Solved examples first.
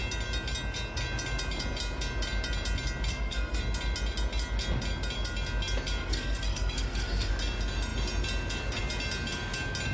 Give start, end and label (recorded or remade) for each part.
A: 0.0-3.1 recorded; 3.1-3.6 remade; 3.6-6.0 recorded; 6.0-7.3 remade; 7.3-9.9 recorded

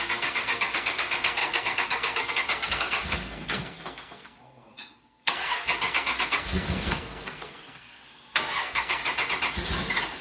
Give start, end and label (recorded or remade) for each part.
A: 0.0-9.0 remade; 9.0-10.2 recorded

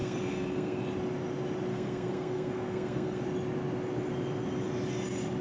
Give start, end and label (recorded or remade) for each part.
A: 0.0-0.8 remade; 0.8-1.7 recorded; 1.7-3.2 remade; 3.2-5.4 recorded

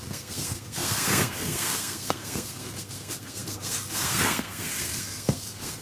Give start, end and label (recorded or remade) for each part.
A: 0.0-5.8 remade

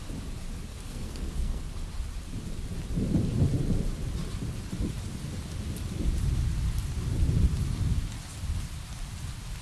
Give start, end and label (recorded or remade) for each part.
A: 0.0-0.7 recorded; 0.7-1.6 remade; 1.6-9.6 recorded

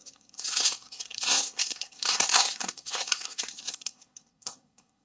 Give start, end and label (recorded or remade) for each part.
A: 0.0-5.0 remade

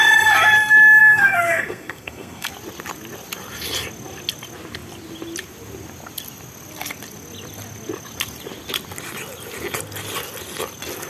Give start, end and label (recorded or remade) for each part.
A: 0.0-1.0 recorded; 1.0-2.5 remade; 2.5-11.1 recorded

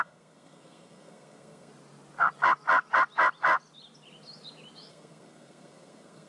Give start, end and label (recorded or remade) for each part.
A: 0.0-1.7 remade; 1.7-4.9 recorded; 4.9-6.3 remade